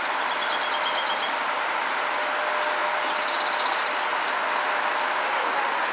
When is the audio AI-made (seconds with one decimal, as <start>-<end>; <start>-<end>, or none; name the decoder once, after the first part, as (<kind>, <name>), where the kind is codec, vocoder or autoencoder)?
none